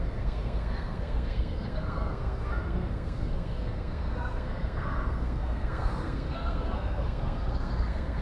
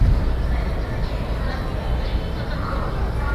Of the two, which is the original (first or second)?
second